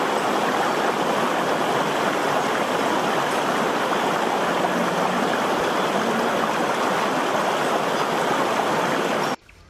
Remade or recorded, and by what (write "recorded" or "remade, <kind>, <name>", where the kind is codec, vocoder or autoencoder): recorded